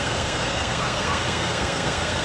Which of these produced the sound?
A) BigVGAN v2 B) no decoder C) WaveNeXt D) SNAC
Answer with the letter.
D